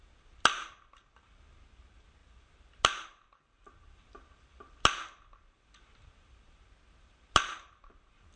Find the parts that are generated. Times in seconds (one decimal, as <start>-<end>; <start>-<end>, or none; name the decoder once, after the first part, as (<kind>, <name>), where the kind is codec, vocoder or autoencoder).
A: none